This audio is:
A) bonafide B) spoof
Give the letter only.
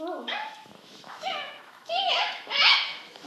B